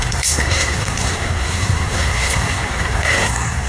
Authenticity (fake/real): fake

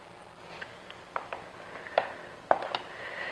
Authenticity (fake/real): real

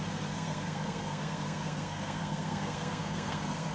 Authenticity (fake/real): fake